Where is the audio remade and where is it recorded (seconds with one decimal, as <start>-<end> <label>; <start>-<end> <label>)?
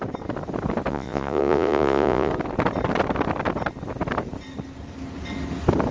0.0-0.9 recorded; 0.9-2.3 remade; 2.3-5.9 recorded